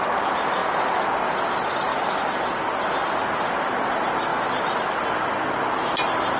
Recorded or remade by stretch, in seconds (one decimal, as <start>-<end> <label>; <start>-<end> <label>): 0.0-6.4 recorded

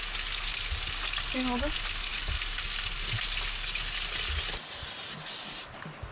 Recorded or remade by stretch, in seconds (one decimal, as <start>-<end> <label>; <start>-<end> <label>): 0.0-6.1 recorded

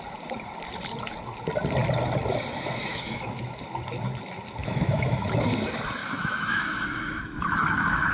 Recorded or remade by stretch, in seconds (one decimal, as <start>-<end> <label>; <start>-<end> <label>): 0.0-2.9 recorded; 2.9-3.6 remade; 3.6-4.6 recorded; 4.6-5.4 remade; 5.4-6.0 recorded; 6.0-8.1 remade

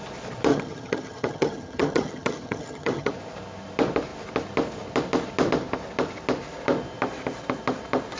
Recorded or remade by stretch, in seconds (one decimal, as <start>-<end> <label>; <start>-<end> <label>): 0.0-0.5 recorded; 0.5-3.1 remade; 3.1-8.2 recorded

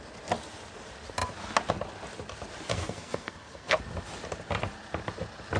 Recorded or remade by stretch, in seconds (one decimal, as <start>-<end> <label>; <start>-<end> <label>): 0.0-2.7 recorded; 2.7-3.8 remade; 3.8-5.6 recorded

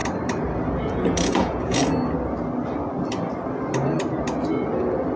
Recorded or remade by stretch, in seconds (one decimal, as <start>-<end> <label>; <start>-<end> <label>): 0.0-0.9 recorded; 0.9-1.8 remade; 1.8-5.2 recorded

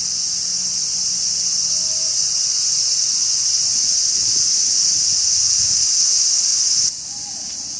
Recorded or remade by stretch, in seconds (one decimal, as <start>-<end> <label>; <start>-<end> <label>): 0.0-0.5 recorded; 0.5-5.2 remade; 5.2-6.5 recorded; 6.5-7.3 remade; 7.3-7.8 recorded

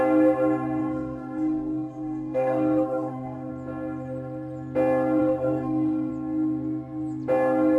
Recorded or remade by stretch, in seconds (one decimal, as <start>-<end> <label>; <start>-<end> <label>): 0.0-0.8 recorded; 0.8-3.5 remade; 3.5-5.2 recorded; 5.2-6.1 remade; 6.1-7.8 recorded